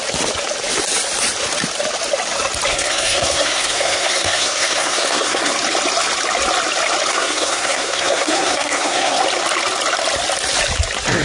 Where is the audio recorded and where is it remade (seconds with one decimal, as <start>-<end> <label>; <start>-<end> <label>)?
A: 0.0-2.7 recorded; 2.7-5.5 remade; 5.5-7.1 recorded; 7.1-9.2 remade; 9.2-11.2 recorded